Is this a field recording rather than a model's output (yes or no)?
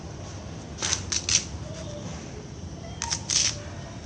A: yes